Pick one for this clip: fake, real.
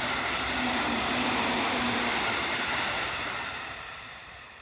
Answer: fake